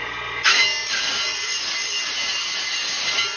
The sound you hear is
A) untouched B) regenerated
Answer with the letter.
A